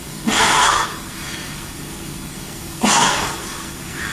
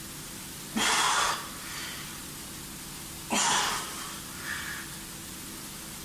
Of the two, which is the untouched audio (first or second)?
second